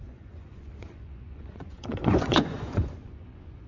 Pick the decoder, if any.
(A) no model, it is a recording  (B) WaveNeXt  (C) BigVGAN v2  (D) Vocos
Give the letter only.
D